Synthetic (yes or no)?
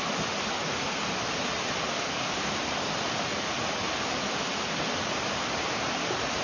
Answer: no